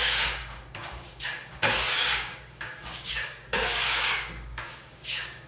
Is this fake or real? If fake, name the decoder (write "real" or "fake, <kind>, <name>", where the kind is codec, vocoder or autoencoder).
fake, codec, DAC